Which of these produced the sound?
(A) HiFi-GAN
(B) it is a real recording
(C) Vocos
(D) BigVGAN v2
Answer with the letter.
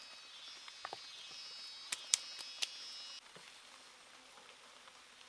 B